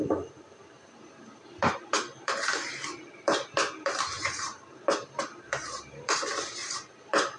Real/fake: fake